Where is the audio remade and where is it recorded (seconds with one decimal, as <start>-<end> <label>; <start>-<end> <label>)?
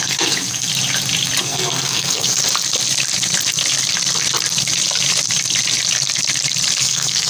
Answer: 0.0-0.7 remade; 0.7-1.4 recorded; 1.4-2.4 remade; 2.4-6.8 recorded; 6.8-7.3 remade